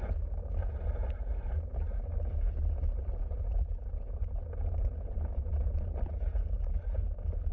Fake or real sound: real